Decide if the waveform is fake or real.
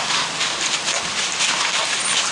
real